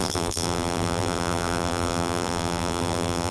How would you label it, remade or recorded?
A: remade